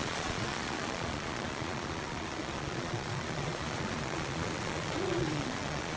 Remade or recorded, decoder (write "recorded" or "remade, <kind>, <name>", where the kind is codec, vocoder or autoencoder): remade, vocoder, Vocos